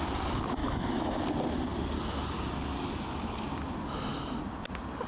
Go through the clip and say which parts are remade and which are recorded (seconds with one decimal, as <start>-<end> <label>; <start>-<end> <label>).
0.0-0.6 recorded; 0.6-1.2 remade; 1.2-5.1 recorded